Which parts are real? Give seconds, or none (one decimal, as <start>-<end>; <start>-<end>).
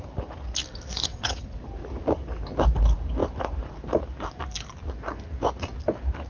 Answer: 0.0-1.1; 1.6-6.3